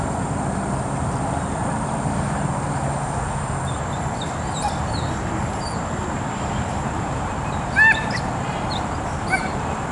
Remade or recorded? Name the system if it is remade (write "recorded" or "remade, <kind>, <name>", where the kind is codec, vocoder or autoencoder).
remade, vocoder, BigVGAN v2